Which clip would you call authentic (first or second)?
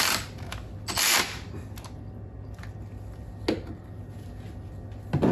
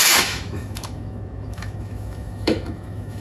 first